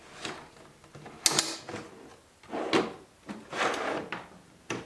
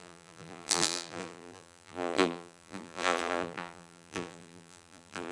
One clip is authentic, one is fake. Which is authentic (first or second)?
first